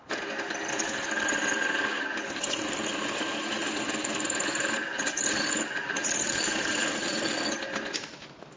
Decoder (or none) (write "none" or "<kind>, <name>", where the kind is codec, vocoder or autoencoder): none